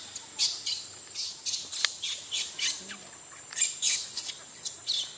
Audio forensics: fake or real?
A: real